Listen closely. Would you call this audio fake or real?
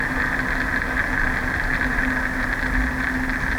real